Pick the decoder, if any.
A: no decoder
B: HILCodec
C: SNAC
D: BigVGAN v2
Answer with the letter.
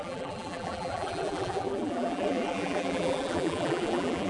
D